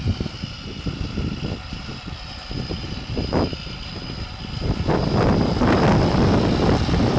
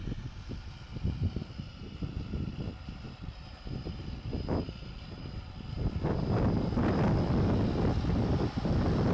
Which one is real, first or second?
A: second